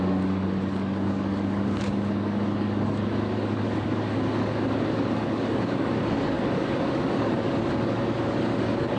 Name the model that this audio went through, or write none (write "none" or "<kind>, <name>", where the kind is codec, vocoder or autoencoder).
codec, DAC